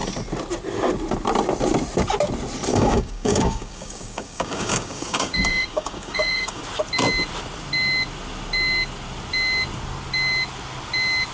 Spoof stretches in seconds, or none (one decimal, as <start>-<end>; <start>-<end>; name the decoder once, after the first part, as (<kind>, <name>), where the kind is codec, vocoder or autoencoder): 2.7-6.6 (codec, DAC)